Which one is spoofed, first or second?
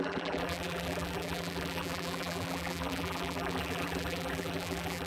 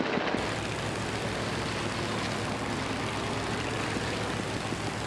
first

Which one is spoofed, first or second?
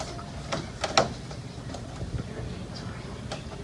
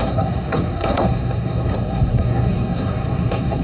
second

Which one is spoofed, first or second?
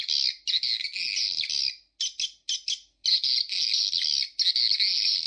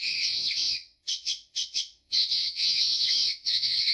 second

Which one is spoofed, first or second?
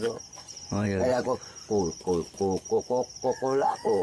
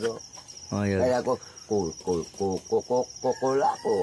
first